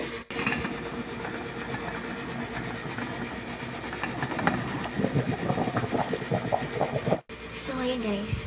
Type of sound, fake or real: real